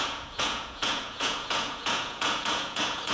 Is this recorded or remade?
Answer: remade